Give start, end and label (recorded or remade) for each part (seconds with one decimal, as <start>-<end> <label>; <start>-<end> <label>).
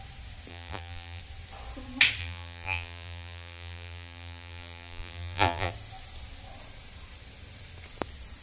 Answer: 0.0-0.5 recorded; 0.5-1.2 remade; 1.2-2.2 recorded; 2.2-5.7 remade; 5.7-8.4 recorded